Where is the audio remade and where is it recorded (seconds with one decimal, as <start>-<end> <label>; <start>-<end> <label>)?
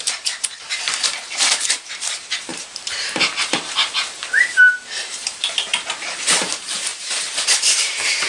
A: 0.0-8.3 remade